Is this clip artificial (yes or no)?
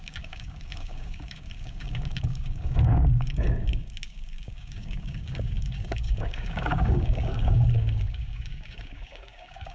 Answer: yes